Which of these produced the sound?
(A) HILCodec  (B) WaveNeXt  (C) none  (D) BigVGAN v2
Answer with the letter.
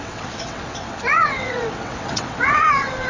B